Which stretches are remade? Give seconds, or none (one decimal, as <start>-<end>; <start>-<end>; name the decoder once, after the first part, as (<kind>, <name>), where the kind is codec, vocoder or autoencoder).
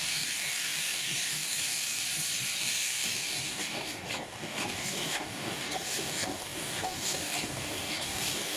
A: 0.0-2.0 (codec, DAC); 2.6-8.6